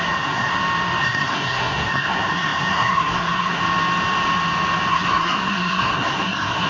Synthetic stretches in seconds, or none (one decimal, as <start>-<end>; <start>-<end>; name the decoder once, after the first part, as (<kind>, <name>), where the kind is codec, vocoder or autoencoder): 0.0-0.5 (codec, SNAC); 1.0-3.6; 4.9-6.7